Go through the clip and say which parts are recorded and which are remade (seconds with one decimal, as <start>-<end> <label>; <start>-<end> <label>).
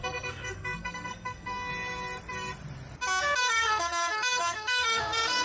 0.0-1.7 remade; 1.7-3.4 recorded; 3.4-5.4 remade